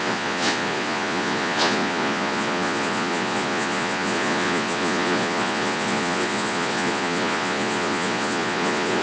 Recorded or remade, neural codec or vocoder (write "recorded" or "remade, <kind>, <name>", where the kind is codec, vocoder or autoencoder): remade, vocoder, Vocos